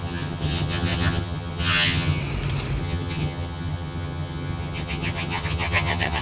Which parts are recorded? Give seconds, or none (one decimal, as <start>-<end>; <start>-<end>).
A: 2.2-2.8